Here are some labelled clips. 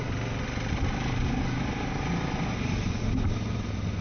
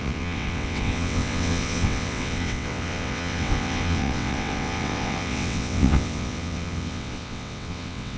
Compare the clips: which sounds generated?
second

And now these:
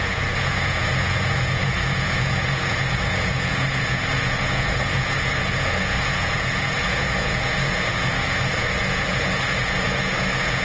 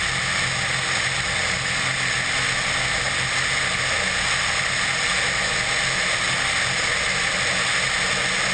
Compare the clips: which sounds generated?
first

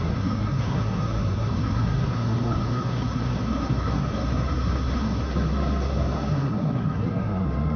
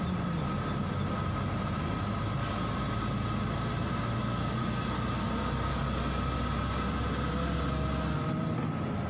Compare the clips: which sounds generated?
first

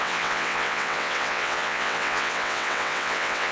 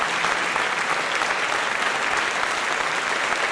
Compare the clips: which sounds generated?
first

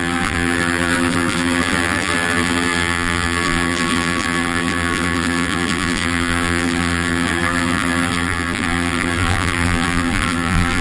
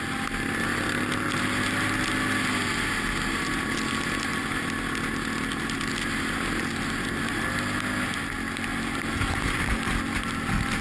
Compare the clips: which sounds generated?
first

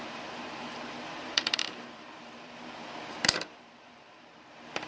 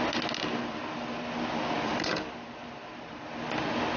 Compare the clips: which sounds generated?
first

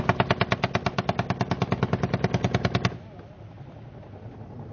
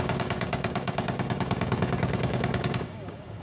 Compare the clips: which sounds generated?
second